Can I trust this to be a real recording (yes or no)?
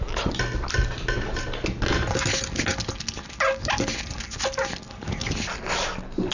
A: yes